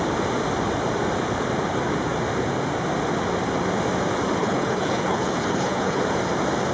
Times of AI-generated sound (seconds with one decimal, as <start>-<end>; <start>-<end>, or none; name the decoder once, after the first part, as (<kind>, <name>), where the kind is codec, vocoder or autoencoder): 4.4-6.0 (codec, HILCodec)